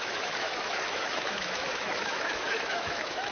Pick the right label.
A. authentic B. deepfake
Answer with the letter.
B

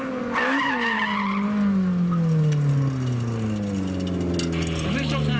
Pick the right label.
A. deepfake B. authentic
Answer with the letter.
B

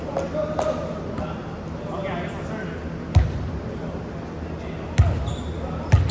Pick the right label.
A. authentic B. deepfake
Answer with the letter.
A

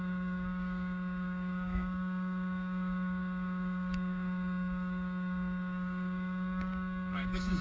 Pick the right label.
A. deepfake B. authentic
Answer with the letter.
A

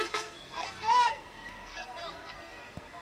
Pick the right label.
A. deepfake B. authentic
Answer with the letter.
A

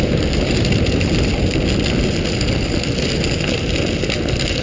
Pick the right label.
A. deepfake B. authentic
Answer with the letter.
B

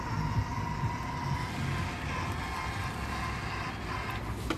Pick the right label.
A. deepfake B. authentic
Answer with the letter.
B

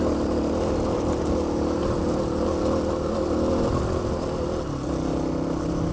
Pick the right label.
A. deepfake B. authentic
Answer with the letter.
B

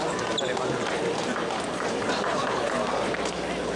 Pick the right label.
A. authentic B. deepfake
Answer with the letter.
A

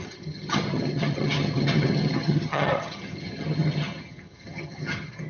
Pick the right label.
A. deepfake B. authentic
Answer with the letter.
A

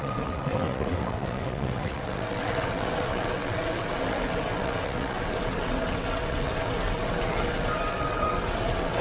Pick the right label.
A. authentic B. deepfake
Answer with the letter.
B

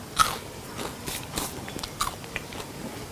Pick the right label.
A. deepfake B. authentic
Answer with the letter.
B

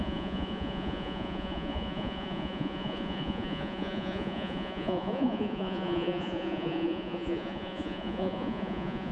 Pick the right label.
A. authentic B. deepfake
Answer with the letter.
B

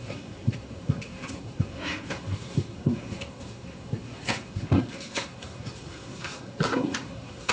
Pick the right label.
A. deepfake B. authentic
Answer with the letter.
A